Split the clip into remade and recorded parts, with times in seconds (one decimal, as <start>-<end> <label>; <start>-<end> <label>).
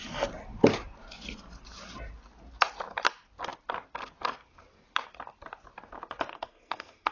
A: 0.0-6.3 recorded; 6.3-7.1 remade